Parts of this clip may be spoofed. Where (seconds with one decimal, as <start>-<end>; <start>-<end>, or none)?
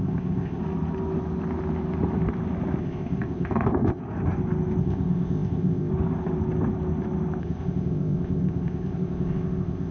0.0-0.6; 2.8-4.0; 4.8-5.9; 7.4-9.9